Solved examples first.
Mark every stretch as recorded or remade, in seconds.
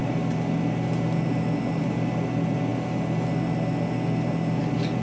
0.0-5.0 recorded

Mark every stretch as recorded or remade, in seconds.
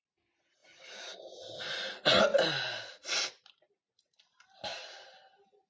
0.0-0.6 recorded; 0.6-2.2 remade; 2.2-4.7 recorded; 4.7-5.7 remade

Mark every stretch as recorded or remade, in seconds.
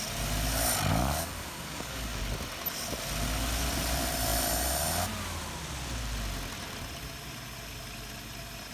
0.0-0.9 recorded; 0.9-2.2 remade; 2.2-8.7 recorded